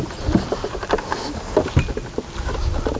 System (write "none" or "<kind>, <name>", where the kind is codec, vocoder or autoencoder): none